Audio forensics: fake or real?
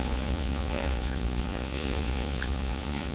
fake